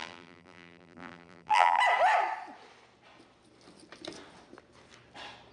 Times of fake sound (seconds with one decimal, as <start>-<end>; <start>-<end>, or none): 0.0-1.8